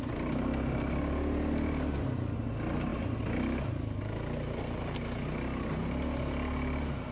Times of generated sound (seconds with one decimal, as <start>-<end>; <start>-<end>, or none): none